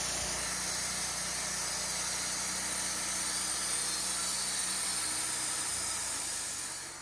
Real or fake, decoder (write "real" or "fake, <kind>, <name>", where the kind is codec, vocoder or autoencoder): real